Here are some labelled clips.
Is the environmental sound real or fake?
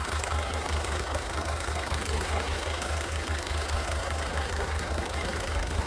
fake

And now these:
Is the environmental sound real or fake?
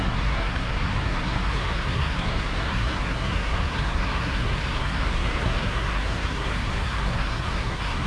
fake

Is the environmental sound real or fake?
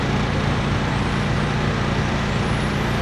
real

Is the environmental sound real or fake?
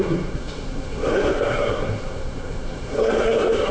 fake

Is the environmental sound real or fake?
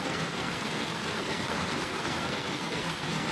fake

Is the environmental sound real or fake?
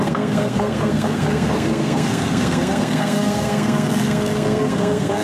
fake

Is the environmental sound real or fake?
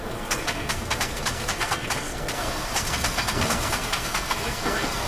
fake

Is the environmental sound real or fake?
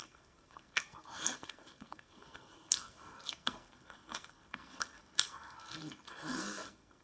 fake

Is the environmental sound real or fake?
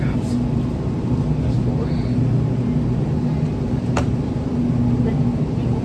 real